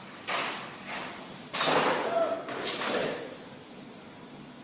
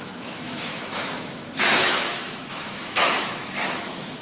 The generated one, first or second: second